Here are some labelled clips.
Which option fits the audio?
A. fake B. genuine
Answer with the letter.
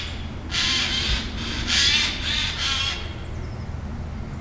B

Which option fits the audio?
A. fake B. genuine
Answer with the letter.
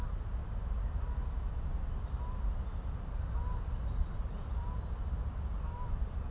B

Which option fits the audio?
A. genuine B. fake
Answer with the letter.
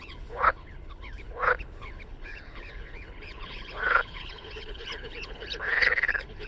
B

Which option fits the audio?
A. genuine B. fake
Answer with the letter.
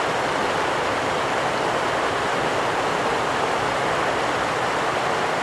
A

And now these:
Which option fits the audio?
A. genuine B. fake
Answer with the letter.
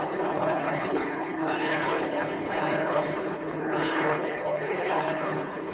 B